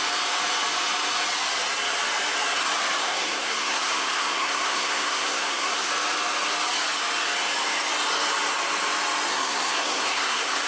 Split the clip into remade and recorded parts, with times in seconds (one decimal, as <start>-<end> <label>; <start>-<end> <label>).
0.0-3.0 recorded; 3.0-5.9 remade; 5.9-9.3 recorded; 9.3-10.7 remade